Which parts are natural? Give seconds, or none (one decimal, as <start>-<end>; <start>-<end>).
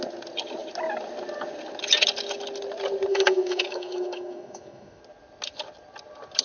0.0-3.1; 5.0-6.4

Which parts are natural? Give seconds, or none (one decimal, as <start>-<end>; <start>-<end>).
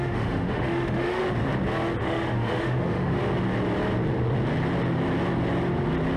1.2-2.0; 3.2-6.2